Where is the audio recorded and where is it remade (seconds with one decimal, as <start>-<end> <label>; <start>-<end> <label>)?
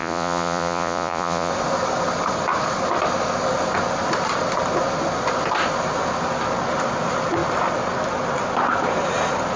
0.0-1.5 remade; 1.5-9.6 recorded